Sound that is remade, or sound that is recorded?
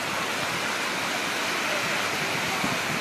recorded